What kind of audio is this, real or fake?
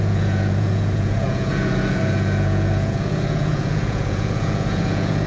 fake